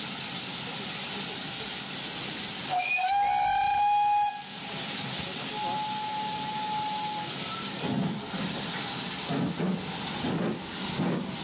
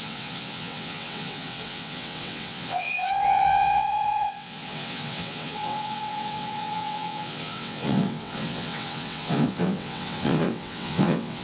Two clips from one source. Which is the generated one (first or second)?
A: second